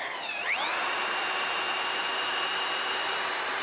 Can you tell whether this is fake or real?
fake